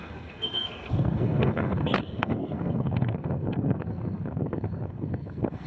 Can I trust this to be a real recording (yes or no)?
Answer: no